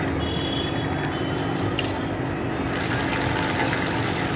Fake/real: real